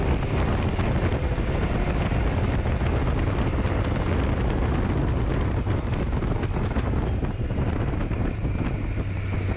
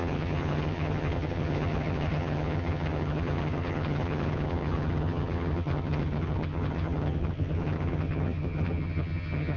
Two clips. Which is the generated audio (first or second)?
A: second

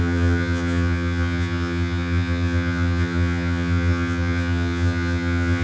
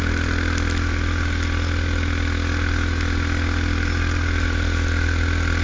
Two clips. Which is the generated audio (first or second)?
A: first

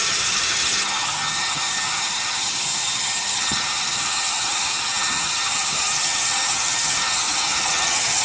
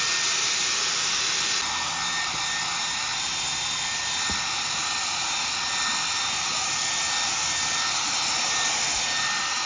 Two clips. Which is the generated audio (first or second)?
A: first